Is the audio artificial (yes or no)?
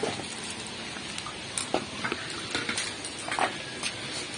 no